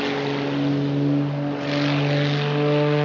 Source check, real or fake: real